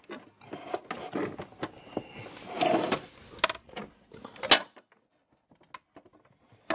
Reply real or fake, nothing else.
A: real